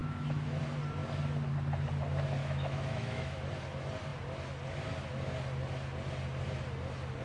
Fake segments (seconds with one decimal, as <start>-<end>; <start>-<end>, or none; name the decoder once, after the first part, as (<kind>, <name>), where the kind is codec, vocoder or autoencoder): 0.0-0.6 (autoencoder, DAC-VAE); 2.4-3.5